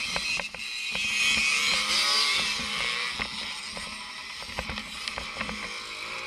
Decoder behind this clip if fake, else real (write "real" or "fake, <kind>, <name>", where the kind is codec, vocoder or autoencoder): real